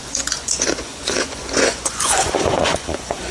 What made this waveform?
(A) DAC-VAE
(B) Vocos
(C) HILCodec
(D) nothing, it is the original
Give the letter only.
B